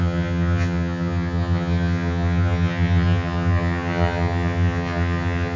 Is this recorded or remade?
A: remade